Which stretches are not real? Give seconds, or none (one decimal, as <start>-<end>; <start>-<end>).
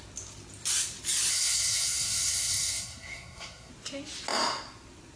1.3-3.7